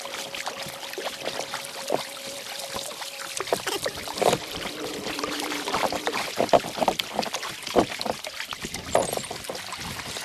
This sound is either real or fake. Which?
fake